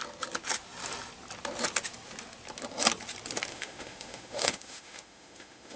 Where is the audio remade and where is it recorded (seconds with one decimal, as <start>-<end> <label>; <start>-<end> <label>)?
0.0-3.5 recorded; 3.5-5.8 remade